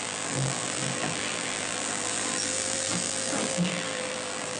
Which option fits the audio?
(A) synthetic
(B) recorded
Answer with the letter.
A